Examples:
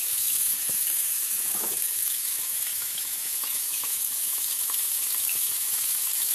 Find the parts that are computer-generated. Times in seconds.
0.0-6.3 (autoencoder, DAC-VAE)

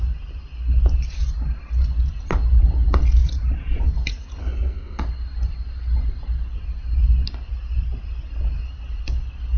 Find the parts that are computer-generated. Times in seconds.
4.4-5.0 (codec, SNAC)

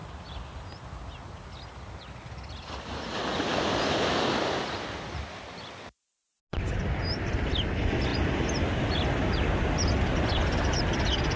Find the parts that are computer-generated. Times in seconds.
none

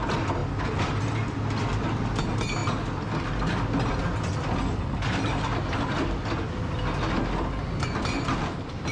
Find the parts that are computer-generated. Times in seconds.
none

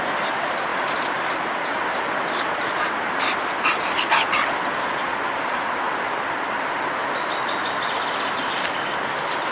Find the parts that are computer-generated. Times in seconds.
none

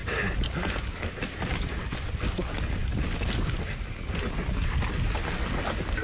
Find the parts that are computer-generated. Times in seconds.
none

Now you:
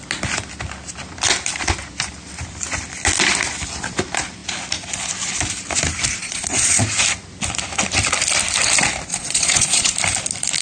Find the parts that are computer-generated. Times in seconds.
6.2-6.8 (vocoder, Vocos); 9.1-9.9